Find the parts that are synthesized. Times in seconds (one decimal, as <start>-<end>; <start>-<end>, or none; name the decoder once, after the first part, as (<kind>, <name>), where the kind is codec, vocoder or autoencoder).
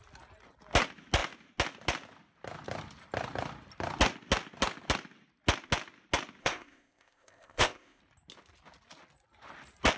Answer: 6.4-8.0 (codec, ZipCodec)